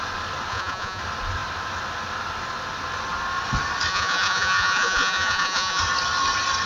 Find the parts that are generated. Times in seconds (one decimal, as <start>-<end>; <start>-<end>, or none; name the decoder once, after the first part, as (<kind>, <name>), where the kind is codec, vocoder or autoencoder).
0.5-1.0 (vocoder, Vocos); 3.9-5.8